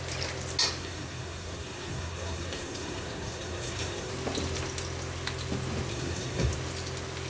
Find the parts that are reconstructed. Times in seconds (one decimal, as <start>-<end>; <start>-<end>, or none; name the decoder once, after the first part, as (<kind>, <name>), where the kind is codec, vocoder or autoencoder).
0.8-4.1 (codec, SNAC); 5.9-6.5